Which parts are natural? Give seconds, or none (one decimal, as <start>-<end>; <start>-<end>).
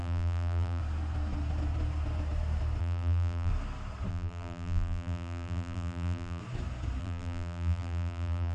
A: 0.8-2.8; 3.5-4.1; 6.4-7.0